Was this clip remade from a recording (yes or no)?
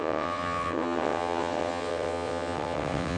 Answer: yes